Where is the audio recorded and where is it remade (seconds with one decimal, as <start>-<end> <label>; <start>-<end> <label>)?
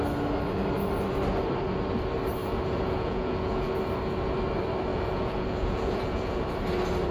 0.0-2.4 recorded; 2.4-3.7 remade; 3.7-4.9 recorded; 4.9-6.5 remade; 6.5-7.1 recorded